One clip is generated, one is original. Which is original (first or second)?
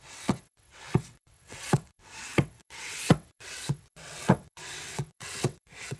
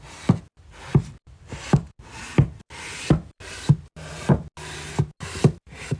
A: second